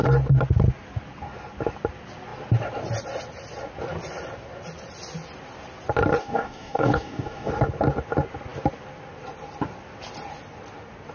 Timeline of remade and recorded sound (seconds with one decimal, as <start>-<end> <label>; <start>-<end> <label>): 0.0-6.2 recorded; 6.2-7.5 remade; 7.5-11.1 recorded